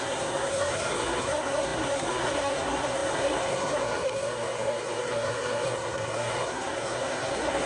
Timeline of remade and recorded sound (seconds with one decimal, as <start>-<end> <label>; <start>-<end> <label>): 0.0-7.7 remade